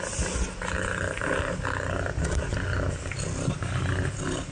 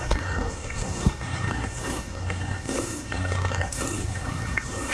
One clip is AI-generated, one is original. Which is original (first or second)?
first